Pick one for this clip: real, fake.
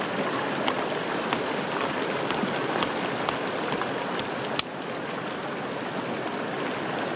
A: real